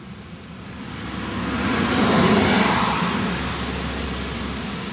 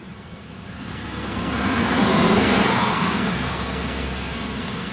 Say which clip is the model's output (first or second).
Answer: second